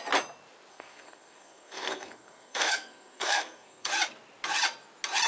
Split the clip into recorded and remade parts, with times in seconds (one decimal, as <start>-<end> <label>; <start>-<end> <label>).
0.0-0.7 recorded; 0.7-3.9 remade; 3.9-5.3 recorded